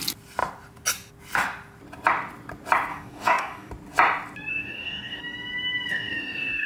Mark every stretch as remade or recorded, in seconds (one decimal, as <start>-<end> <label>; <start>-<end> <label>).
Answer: 0.0-2.9 recorded; 2.9-3.7 remade; 3.7-4.5 recorded; 4.5-5.2 remade; 5.2-5.9 recorded; 5.9-6.7 remade